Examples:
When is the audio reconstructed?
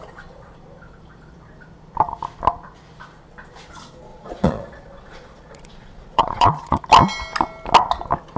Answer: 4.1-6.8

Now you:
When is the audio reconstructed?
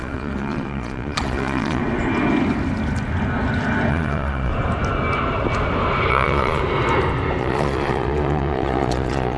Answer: 0.0-1.8; 3.9-4.5; 6.1-6.6; 7.4-9.4